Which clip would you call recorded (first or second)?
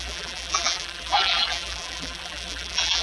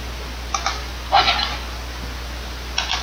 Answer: second